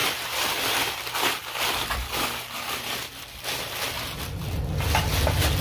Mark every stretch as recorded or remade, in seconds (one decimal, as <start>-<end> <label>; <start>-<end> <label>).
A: 0.0-3.4 remade; 3.4-5.6 recorded